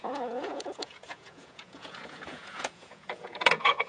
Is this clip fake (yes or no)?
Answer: yes